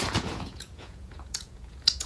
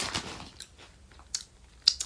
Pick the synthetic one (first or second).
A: first